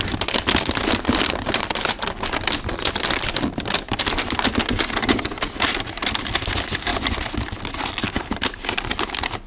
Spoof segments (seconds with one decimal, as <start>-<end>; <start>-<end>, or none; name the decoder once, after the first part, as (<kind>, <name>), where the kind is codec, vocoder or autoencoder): none